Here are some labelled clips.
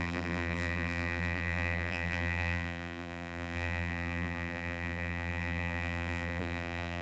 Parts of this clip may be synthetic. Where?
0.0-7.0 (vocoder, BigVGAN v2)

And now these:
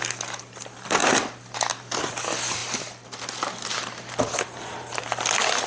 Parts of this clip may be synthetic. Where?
none

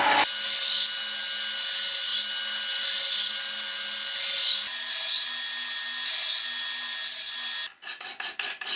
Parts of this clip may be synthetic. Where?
none